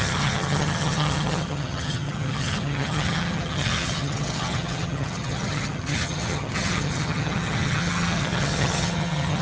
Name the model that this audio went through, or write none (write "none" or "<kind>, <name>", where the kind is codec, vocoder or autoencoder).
vocoder, HiFi-GAN